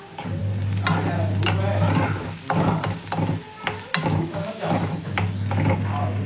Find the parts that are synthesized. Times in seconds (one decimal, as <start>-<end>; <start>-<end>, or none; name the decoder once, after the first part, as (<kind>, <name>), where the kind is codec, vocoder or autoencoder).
4.0-5.2 (autoencoder, DAC-VAE)